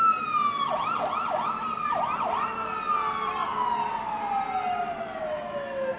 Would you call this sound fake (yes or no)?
no